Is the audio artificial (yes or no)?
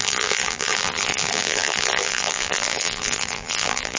yes